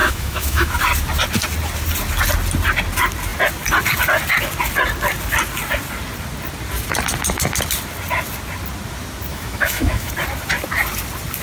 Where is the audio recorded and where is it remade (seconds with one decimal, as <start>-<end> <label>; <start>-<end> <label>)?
0.0-0.7 remade; 0.7-9.3 recorded; 9.3-10.1 remade; 10.1-11.4 recorded